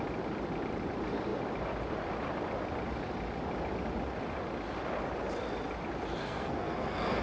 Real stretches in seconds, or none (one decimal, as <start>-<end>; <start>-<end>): 0.0-6.2